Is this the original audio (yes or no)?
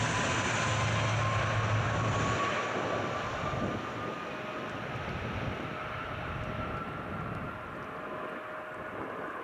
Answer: yes